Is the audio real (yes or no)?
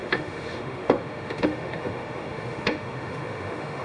no